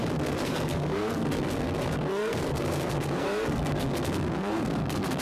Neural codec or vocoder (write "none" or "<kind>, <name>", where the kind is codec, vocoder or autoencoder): codec, SNAC